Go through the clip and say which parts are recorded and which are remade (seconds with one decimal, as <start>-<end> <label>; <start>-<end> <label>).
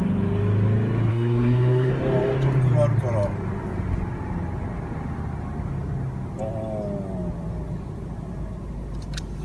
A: 0.0-1.1 recorded; 1.1-1.9 remade; 1.9-9.4 recorded